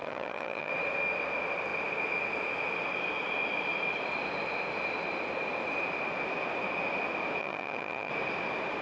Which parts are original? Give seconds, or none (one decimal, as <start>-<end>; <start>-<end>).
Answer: 0.7-7.4; 8.1-8.8